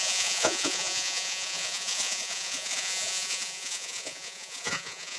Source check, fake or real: fake